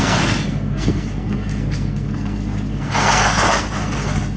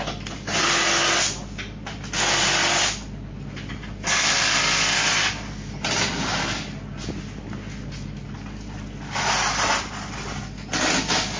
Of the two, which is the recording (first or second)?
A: second